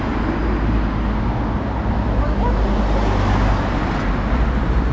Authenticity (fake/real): real